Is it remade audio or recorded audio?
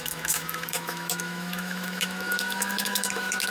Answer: remade